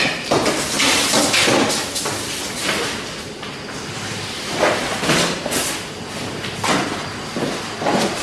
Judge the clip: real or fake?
real